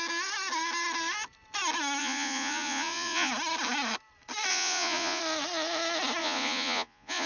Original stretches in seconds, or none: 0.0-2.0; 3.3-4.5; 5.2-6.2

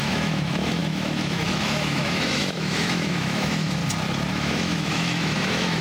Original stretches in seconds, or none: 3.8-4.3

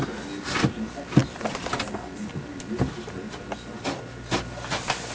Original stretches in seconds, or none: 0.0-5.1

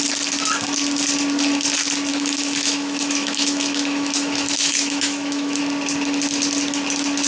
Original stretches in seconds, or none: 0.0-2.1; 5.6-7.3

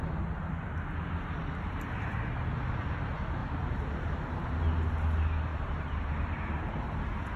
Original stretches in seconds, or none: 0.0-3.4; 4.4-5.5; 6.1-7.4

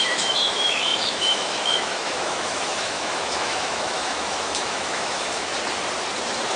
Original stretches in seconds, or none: 5.5-6.6